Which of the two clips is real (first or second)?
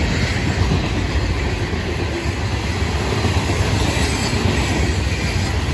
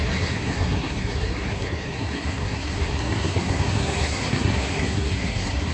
first